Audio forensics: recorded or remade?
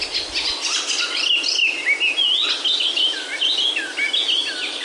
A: recorded